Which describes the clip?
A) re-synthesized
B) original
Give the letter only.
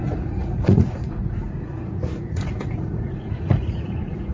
A